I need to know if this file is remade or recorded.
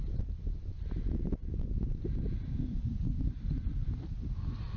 recorded